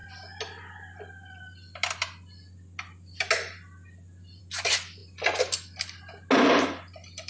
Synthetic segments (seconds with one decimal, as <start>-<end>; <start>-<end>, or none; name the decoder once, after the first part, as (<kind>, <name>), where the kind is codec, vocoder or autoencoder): none